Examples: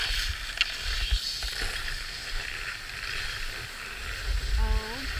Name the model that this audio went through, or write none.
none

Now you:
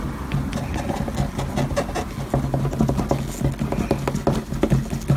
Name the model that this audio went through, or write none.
none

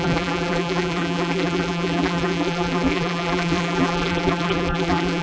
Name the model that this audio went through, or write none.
vocoder, BigVGAN v2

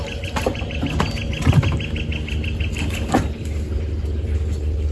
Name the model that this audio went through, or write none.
none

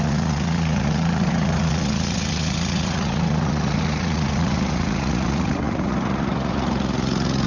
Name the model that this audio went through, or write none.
vocoder, Vocos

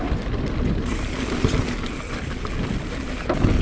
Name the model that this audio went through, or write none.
none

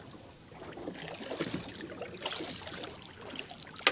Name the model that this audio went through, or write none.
none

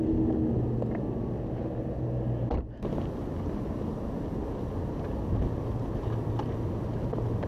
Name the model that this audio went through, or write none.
none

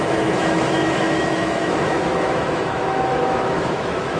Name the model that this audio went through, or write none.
autoencoder, DAC-VAE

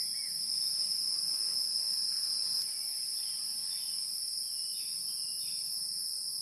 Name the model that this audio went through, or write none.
none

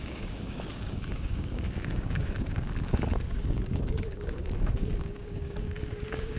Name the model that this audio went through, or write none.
codec, DAC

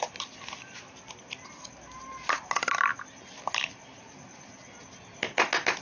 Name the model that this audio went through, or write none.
none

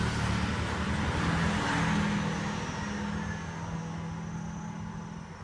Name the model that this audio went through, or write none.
none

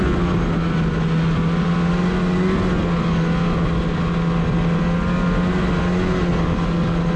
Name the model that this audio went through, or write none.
none